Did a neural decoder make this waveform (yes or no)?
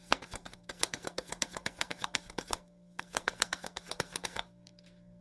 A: yes